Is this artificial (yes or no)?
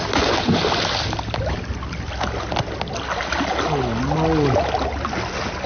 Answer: no